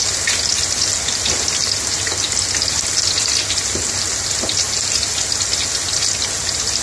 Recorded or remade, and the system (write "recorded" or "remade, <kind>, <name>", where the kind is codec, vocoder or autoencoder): recorded